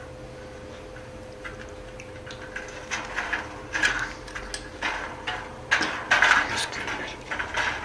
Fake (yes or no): no